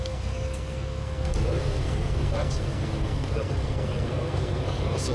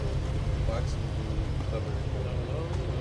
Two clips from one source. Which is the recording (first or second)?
second